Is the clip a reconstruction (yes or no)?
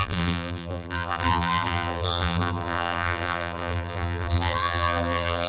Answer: yes